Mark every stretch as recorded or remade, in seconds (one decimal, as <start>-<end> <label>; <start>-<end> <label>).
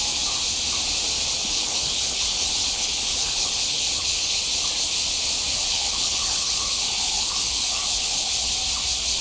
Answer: 0.0-1.4 recorded; 1.4-4.4 remade; 4.4-5.5 recorded; 5.5-8.5 remade; 8.5-9.2 recorded